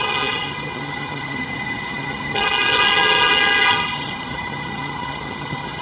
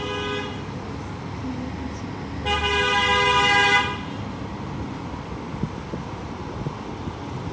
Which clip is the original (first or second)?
second